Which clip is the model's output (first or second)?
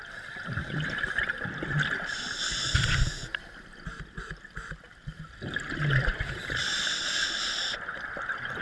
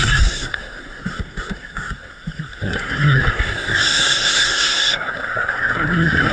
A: second